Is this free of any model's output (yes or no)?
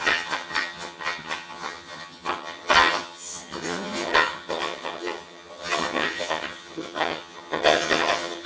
no